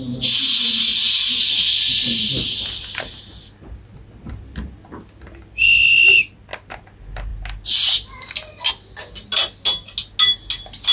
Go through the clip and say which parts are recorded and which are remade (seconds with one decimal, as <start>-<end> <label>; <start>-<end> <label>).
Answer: 0.0-10.9 recorded